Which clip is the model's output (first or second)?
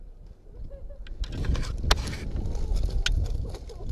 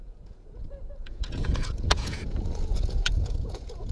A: second